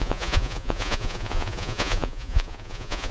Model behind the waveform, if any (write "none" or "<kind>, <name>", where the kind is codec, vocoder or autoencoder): vocoder, Vocos